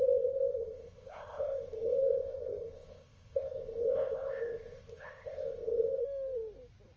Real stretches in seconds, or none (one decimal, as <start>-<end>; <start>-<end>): 6.0-7.0